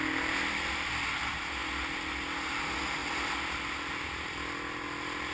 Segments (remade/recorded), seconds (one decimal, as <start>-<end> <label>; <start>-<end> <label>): 0.0-5.3 recorded

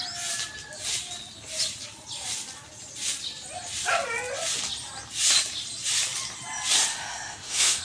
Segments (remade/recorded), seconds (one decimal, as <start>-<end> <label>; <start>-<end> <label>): 0.0-6.9 recorded; 6.9-7.8 remade

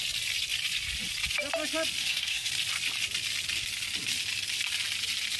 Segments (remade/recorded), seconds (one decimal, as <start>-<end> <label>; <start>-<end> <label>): 0.0-2.0 recorded; 2.0-2.5 remade; 2.5-5.4 recorded

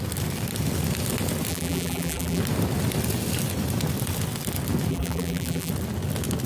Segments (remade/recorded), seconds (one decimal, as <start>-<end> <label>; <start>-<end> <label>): 0.0-1.5 recorded; 1.5-2.4 remade; 2.4-4.9 recorded; 4.9-5.7 remade; 5.7-6.5 recorded

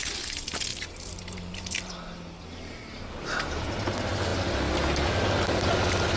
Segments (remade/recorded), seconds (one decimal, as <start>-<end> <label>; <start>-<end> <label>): 0.0-0.7 recorded; 0.7-1.9 remade; 1.9-6.2 recorded

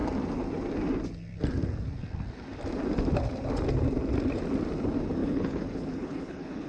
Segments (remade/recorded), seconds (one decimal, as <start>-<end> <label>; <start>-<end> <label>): 0.0-5.2 recorded; 5.2-6.7 remade

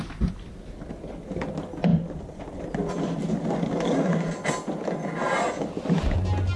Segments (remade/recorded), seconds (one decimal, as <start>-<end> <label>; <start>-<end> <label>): 0.0-6.6 recorded

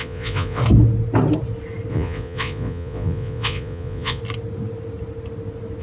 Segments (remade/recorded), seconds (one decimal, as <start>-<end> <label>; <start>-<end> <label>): 0.0-0.6 remade; 0.6-1.9 recorded; 1.9-4.2 remade; 4.2-5.8 recorded